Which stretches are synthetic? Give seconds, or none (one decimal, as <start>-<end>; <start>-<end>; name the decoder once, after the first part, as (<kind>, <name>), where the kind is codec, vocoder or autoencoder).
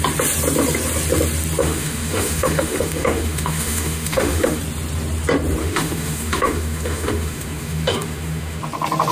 1.6-4.6 (autoencoder, DAC-VAE); 5.6-8.6